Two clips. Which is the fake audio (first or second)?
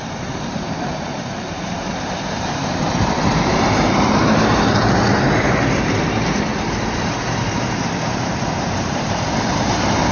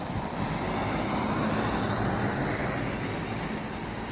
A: first